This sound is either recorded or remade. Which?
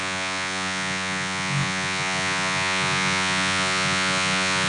remade